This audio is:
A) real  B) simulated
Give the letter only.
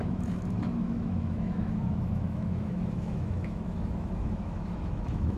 B